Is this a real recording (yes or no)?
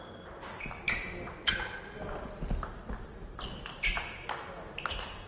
yes